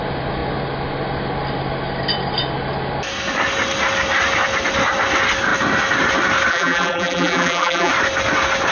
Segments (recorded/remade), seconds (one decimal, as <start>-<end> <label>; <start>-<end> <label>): 0.0-6.5 recorded; 6.5-7.9 remade; 7.9-8.7 recorded